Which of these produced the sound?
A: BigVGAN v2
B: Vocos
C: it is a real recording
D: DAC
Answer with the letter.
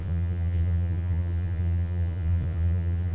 B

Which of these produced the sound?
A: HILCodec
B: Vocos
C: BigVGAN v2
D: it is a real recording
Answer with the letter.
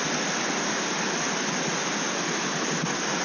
D